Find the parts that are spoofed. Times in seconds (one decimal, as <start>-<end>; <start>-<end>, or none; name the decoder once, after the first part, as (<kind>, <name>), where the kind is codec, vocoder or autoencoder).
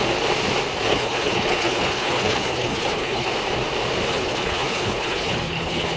0.9-3.3 (codec, HILCodec); 4.1-6.0